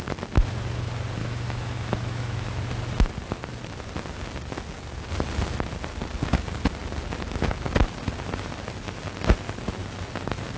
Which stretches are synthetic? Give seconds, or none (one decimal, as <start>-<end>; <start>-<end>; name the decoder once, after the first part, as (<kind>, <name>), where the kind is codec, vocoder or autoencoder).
1.2-2.7 (autoencoder, DAC-VAE)